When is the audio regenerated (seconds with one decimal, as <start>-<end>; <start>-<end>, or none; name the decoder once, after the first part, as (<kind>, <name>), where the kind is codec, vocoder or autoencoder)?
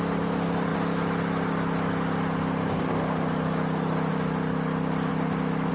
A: none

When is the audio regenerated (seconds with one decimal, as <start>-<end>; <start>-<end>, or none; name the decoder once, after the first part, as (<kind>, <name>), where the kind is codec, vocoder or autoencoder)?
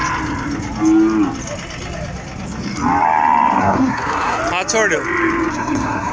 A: 3.6-4.4 (codec, SNAC); 5.5-6.1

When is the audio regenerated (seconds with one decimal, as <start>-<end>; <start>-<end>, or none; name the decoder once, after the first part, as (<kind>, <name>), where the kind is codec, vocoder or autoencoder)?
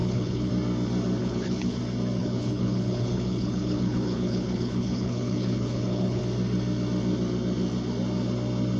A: 0.0-0.5 (codec, HILCodec); 1.2-1.8; 2.2-6.2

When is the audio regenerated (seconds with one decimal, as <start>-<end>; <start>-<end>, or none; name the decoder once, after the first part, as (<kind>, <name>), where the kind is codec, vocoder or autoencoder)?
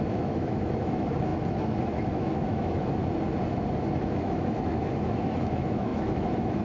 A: 0.0-3.0 (autoencoder, DAC-VAE); 4.0-6.6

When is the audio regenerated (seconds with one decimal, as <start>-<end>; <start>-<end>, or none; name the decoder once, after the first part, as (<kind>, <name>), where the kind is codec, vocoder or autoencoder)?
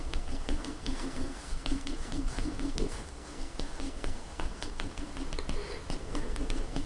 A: 0.0-5.1 (codec, SNAC); 6.0-6.9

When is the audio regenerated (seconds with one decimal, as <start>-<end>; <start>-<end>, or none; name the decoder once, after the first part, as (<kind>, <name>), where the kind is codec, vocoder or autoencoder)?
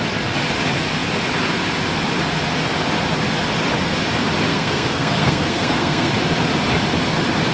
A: 4.5-6.1 (codec, SNAC)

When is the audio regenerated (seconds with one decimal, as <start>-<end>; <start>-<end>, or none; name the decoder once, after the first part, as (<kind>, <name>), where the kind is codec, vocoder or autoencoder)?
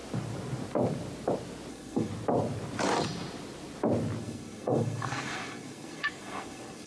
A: 1.7-2.1 (codec, SNAC); 4.2-6.9